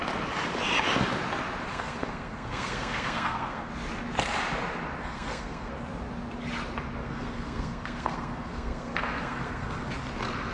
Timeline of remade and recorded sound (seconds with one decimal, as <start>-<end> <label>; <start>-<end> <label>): 0.0-1.7 recorded; 1.7-3.7 remade; 3.7-5.0 recorded; 5.0-5.7 remade; 5.7-7.0 recorded; 7.0-9.9 remade; 9.9-10.5 recorded